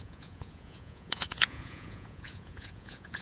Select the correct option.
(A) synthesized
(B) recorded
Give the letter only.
A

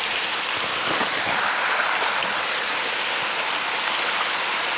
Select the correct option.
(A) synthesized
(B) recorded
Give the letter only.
B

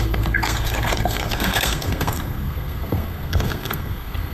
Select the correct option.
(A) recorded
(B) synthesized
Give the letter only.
B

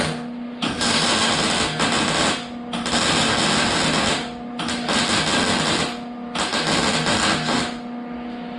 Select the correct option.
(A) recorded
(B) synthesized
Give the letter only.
A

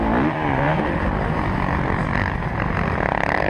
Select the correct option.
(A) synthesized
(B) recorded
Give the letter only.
B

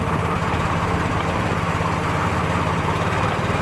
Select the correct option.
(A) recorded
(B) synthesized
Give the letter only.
A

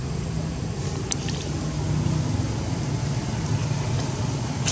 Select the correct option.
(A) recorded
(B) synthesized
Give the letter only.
A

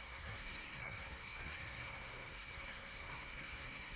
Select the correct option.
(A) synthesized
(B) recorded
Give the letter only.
A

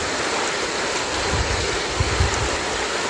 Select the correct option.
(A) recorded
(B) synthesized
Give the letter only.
A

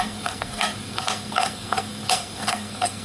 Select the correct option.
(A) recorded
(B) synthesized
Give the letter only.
B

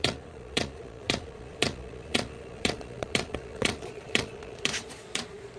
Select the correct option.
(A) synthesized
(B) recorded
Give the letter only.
A